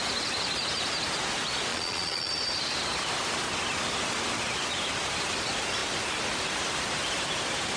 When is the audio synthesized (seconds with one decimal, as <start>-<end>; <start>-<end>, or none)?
1.7-2.3